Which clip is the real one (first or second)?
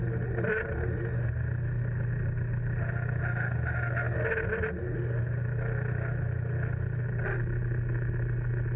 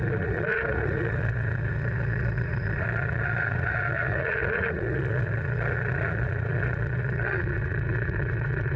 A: first